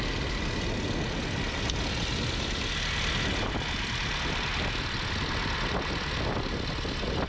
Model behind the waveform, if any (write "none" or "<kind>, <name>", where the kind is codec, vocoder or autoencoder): none